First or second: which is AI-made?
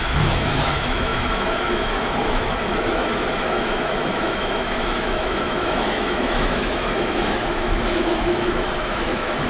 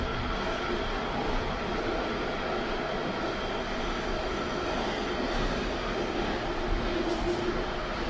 first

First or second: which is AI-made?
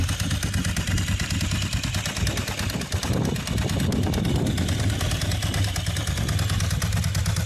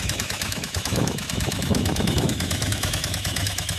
second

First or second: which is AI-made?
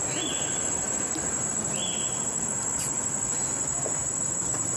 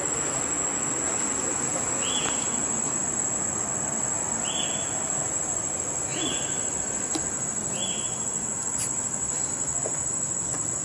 first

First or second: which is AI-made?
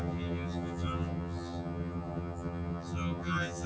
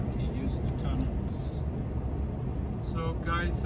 first